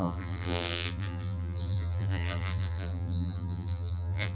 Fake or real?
fake